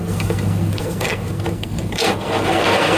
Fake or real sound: fake